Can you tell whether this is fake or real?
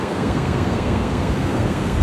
fake